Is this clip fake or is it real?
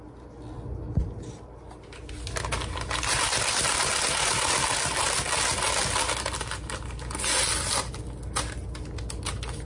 real